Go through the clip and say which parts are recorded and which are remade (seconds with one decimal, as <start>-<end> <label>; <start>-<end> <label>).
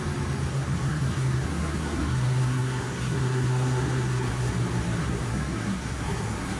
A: 0.0-0.5 recorded; 0.5-4.5 remade; 4.5-5.0 recorded; 5.0-6.6 remade